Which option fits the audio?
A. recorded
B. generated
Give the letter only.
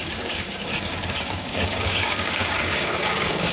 B